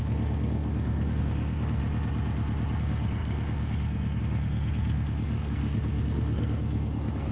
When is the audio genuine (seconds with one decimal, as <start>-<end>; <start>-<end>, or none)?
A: 1.8-2.8